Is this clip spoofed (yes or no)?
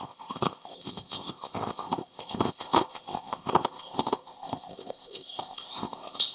yes